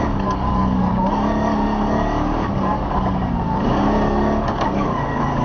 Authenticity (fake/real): fake